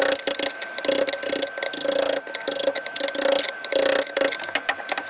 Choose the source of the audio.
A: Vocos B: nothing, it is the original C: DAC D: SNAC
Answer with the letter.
B